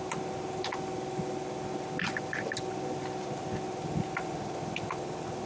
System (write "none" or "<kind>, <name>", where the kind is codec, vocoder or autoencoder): none